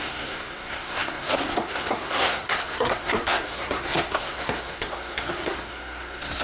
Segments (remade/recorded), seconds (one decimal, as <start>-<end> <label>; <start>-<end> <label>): 0.0-6.4 remade